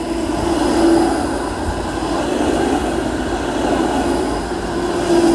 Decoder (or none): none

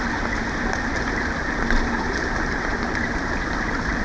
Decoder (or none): none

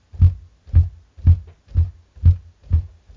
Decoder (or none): none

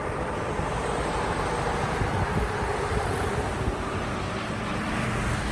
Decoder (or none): vocoder, BigVGAN v2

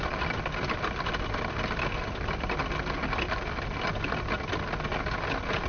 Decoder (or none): none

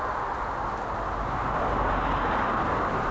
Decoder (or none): none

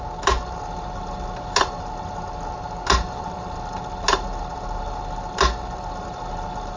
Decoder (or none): none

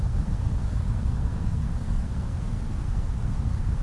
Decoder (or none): codec, SNAC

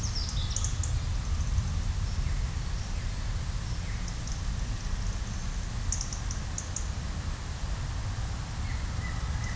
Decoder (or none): none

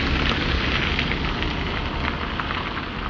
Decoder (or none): none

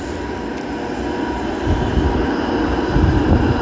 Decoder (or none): none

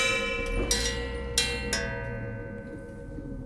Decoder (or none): none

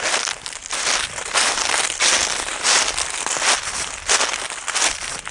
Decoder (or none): none